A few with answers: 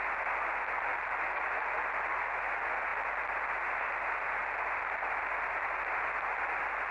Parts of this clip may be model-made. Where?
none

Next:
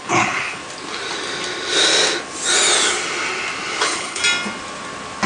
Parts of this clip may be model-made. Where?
0.0-0.6 (codec, HILCodec); 3.8-4.2

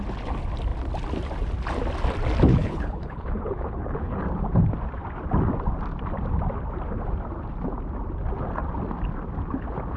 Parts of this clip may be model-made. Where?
2.5-4.2 (codec, HILCodec)

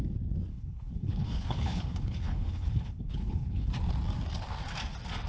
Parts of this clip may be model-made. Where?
0.5-3.7 (codec, HILCodec)

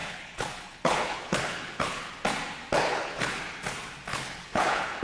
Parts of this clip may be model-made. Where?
0.0-2.1 (codec, HILCodec); 2.8-3.4; 4.1-5.0

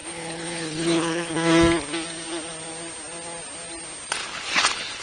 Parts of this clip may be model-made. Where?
0.0-1.3 (codec, HILCodec); 4.2-5.0